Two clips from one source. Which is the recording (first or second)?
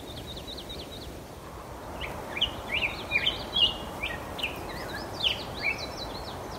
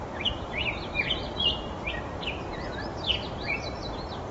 first